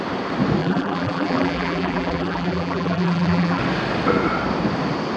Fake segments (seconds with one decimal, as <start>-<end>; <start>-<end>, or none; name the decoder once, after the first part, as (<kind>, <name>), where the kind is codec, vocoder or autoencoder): 0.6-3.6 (vocoder, BigVGAN v2)